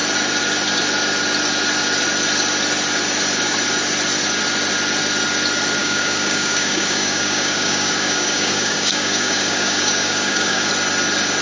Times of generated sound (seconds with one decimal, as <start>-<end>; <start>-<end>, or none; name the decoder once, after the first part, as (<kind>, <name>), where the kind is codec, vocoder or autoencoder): 5.8-10.7 (codec, DAC)